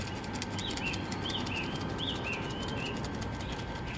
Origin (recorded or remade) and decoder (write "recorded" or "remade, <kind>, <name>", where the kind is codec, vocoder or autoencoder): recorded